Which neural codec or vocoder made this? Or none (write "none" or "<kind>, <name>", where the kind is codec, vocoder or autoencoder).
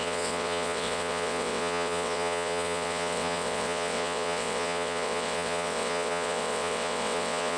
vocoder, WaveNeXt